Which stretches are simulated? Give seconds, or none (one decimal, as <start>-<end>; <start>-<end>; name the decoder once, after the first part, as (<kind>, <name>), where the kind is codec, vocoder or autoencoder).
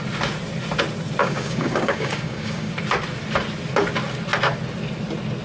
1.2-2.7 (codec, DAC)